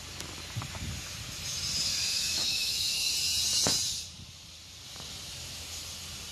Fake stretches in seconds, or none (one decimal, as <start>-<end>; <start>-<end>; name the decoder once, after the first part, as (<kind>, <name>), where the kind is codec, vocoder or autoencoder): 2.1-3.1 (autoencoder, DAC-VAE)